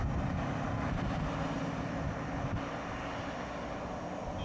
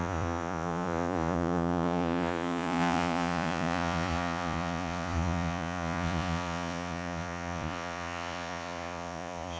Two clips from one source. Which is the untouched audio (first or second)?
first